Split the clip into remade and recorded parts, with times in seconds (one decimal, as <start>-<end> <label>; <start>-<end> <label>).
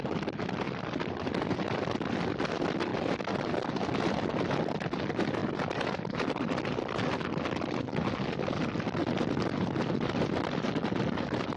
0.0-11.6 recorded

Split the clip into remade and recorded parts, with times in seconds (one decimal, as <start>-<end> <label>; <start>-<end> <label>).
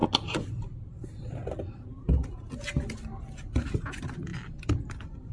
0.0-5.3 recorded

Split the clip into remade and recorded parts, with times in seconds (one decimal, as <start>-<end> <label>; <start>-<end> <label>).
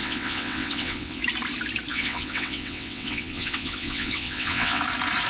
0.0-1.2 remade; 1.2-1.9 recorded; 1.9-4.8 remade; 4.8-5.3 recorded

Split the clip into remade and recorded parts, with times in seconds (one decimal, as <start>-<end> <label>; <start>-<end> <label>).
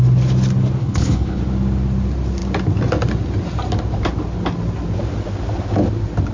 0.0-0.8 recorded; 0.8-1.4 remade; 1.4-6.3 recorded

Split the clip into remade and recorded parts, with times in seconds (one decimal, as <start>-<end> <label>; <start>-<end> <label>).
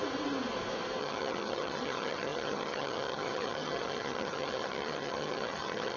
0.0-1.0 recorded; 1.0-6.0 remade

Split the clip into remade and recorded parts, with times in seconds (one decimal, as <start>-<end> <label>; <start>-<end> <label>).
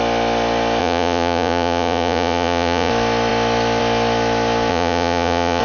0.0-0.8 recorded; 0.8-2.9 remade; 2.9-4.7 recorded; 4.7-5.6 remade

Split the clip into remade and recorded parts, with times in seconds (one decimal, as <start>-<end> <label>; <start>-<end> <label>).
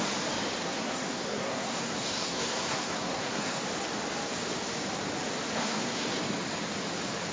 0.0-0.6 recorded; 0.6-3.6 remade; 3.6-5.6 recorded; 5.6-6.2 remade; 6.2-7.3 recorded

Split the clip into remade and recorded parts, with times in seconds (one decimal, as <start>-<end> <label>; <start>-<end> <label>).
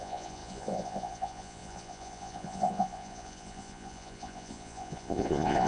0.0-5.7 remade